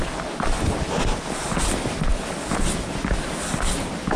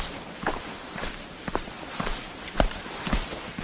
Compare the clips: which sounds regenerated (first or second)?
second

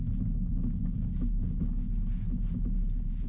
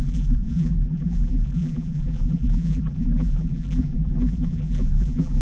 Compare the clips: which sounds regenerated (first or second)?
second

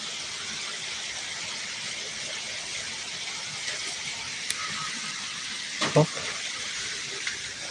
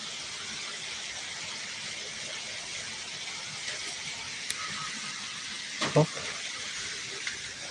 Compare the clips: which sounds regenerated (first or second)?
first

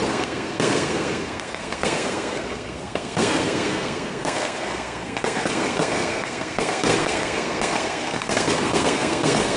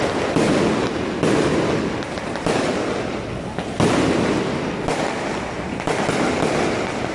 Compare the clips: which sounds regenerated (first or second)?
first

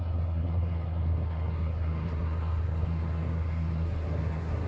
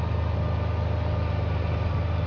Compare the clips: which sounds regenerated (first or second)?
first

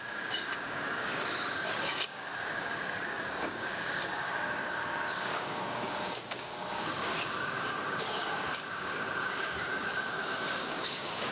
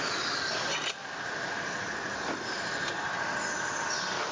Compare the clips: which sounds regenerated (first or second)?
first